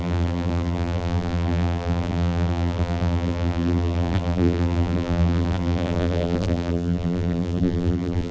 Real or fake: fake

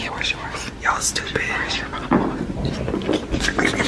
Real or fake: real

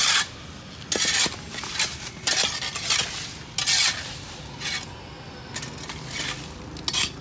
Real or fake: real